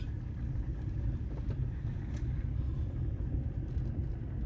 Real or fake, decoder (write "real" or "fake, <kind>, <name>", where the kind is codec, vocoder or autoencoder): real